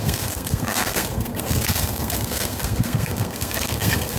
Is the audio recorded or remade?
remade